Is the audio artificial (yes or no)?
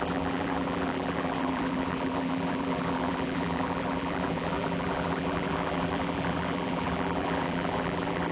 yes